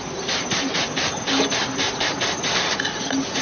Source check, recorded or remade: recorded